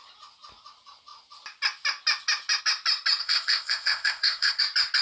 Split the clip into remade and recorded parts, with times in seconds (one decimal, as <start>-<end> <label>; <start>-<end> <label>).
0.0-3.2 recorded; 3.2-4.6 remade; 4.6-5.0 recorded